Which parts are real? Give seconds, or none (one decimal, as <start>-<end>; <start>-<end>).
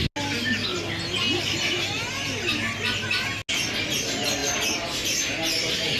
0.0-6.0